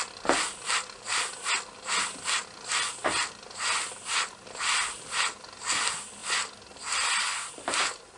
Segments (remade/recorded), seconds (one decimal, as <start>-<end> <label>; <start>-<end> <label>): 0.0-8.2 recorded